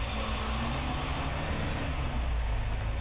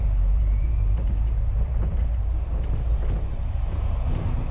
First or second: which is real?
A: first